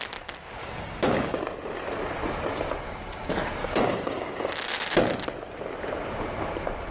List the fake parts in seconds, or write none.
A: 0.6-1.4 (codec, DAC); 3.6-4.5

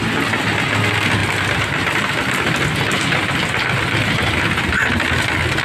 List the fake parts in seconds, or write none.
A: none

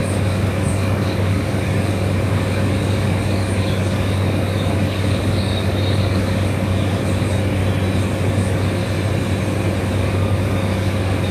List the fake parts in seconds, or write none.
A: 0.0-7.6 (codec, DAC); 8.3-8.8; 9.8-11.3

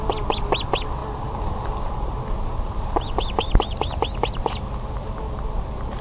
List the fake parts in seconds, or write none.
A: none

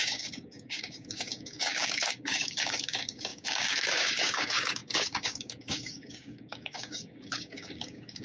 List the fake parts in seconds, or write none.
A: 0.0-8.2 (codec, DAC)

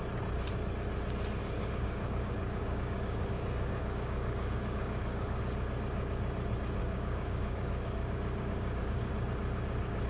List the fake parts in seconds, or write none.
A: 1.4-5.4 (codec, DAC); 6.8-9.1